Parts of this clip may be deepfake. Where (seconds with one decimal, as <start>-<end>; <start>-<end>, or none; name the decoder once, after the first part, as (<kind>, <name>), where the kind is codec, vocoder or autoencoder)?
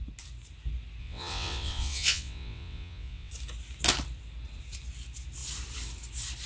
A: 1.0-3.3 (vocoder, WaveNeXt)